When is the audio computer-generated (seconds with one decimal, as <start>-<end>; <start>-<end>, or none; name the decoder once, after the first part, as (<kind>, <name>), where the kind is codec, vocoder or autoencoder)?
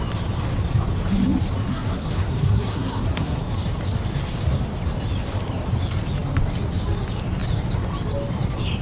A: 1.7-3.5 (codec, SNAC)